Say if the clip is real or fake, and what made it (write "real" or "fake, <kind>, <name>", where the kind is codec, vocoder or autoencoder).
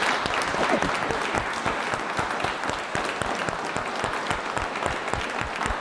real